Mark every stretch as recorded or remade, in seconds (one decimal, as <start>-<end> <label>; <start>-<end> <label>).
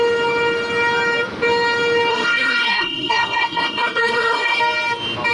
0.0-2.1 recorded; 2.1-4.6 remade; 4.6-5.3 recorded